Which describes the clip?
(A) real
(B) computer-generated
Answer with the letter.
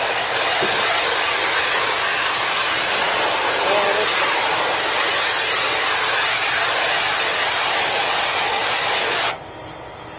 A